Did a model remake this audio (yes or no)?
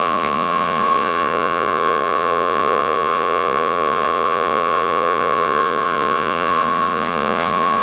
yes